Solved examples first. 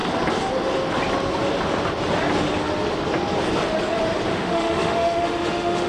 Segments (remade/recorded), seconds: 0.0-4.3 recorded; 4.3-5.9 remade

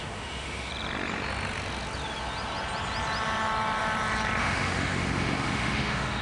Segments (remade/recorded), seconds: 0.0-0.7 remade; 0.7-4.4 recorded; 4.4-6.2 remade